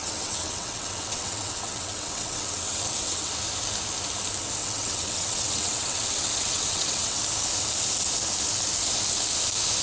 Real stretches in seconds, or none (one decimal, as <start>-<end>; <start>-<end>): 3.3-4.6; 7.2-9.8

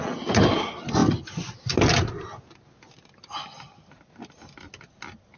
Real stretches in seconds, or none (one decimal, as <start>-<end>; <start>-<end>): 0.0-5.4

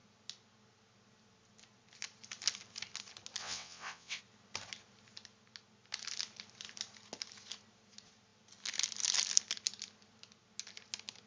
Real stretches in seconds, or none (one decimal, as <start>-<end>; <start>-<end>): 0.0-3.4; 4.2-11.3

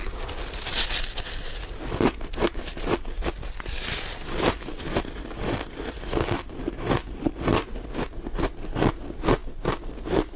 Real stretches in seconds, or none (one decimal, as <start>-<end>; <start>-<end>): 0.0-10.4

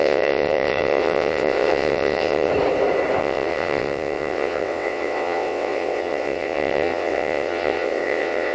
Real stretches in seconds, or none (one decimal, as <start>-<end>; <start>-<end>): 2.5-3.2

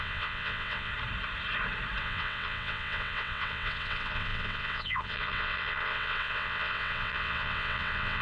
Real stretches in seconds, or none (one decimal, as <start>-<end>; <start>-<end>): 0.9-2.0

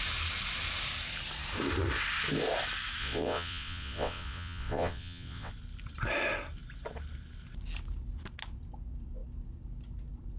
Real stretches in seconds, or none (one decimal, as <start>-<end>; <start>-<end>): 0.0-3.0; 5.5-10.4